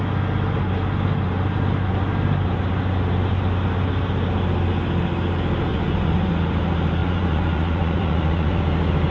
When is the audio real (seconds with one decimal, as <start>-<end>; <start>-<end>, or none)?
0.0-5.7; 6.3-7.0; 8.6-9.1